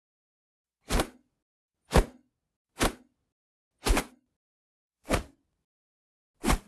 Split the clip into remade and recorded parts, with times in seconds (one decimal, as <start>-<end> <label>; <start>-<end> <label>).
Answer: 0.0-6.7 recorded